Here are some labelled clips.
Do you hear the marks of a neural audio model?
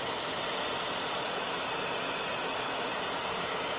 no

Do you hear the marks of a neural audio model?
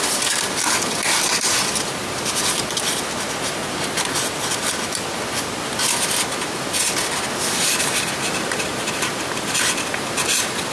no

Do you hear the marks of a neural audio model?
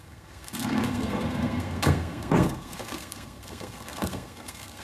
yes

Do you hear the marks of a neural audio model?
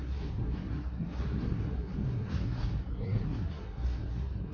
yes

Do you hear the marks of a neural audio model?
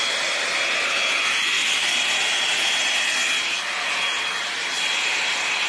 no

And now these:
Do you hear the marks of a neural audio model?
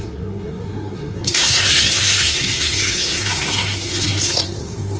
yes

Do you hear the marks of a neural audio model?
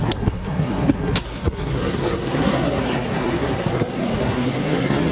yes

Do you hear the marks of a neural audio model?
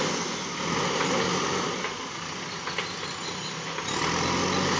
no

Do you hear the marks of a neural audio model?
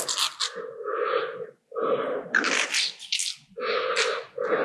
no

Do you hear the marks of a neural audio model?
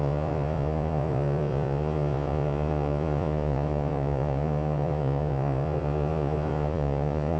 yes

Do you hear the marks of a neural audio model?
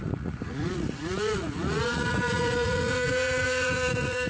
yes